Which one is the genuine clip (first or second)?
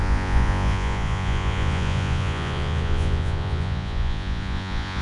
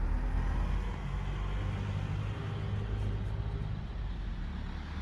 second